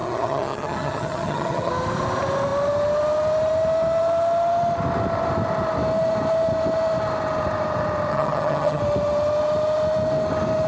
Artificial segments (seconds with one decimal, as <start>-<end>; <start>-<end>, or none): 0.0-1.7; 8.1-8.8